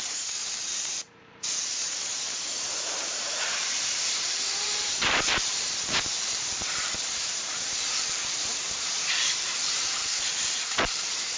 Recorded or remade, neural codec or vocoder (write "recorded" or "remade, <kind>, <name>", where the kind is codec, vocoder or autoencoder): remade, vocoder, BigVGAN v2